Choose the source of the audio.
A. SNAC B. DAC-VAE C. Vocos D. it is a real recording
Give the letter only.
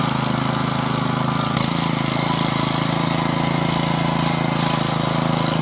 D